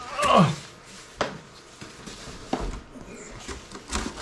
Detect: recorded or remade recorded